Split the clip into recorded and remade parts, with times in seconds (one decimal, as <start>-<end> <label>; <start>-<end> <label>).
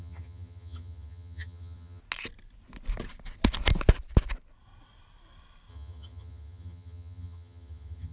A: 0.0-2.0 remade; 2.0-5.7 recorded; 5.7-8.1 remade